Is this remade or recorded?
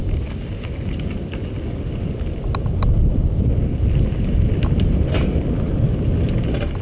recorded